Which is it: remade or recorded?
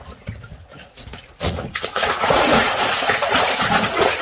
remade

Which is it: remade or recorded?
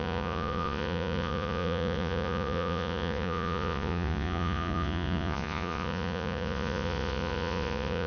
remade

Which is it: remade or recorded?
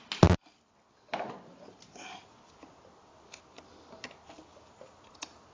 recorded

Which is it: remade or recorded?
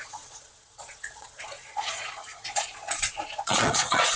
remade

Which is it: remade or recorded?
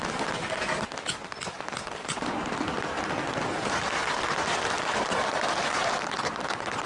recorded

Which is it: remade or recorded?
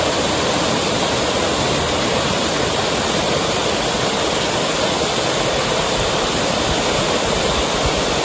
recorded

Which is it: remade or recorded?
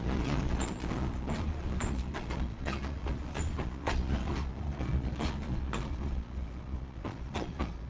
remade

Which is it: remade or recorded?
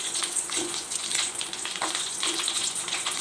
remade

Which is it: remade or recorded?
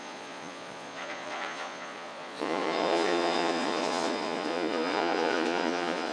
remade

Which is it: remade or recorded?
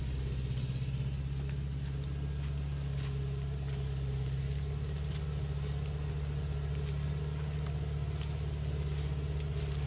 recorded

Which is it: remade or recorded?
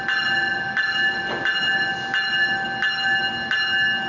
recorded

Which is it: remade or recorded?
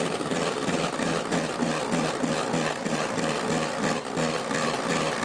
recorded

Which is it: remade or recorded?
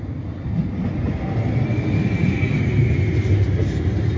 recorded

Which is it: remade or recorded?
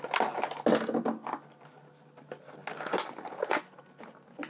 recorded